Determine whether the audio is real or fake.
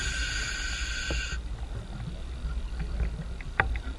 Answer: real